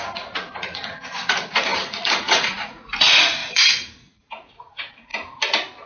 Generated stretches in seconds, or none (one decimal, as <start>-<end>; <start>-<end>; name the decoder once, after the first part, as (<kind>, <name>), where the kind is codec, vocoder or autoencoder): 0.0-5.1 (vocoder, Vocos)